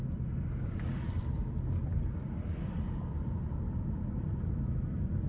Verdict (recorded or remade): remade